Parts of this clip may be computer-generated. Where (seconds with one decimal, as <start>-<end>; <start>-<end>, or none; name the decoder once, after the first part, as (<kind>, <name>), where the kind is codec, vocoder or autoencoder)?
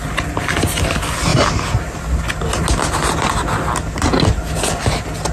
none